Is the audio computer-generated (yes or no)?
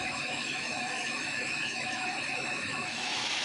yes